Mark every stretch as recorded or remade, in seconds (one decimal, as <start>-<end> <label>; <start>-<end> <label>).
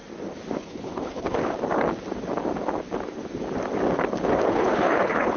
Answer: 0.0-0.6 recorded; 0.6-1.4 remade; 1.4-4.5 recorded; 4.5-5.4 remade